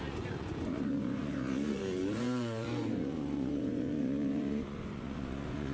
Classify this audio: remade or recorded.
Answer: remade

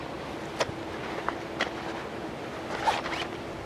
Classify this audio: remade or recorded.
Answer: recorded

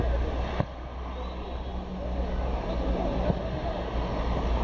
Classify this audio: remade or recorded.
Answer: recorded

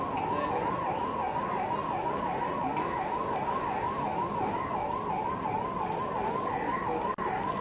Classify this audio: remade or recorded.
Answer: recorded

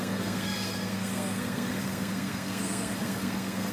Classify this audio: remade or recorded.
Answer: remade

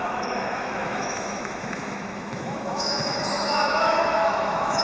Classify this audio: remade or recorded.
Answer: remade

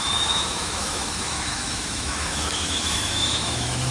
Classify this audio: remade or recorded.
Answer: remade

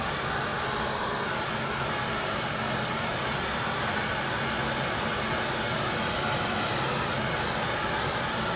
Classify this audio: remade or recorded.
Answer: recorded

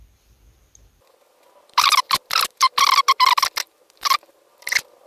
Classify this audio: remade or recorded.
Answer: remade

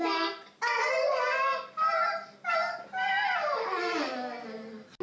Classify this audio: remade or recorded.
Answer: recorded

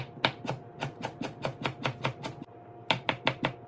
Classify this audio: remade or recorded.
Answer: recorded